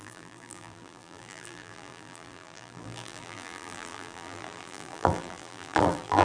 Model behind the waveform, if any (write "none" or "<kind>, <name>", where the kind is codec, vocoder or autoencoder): vocoder, BigVGAN v2